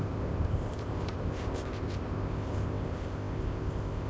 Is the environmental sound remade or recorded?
remade